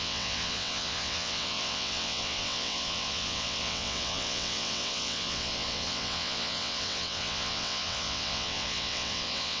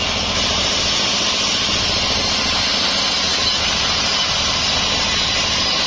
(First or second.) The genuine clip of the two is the second